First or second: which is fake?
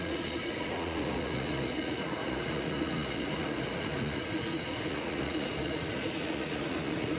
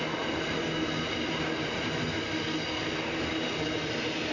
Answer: first